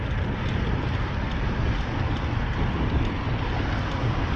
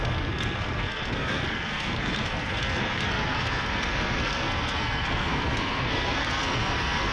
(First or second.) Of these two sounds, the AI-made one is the second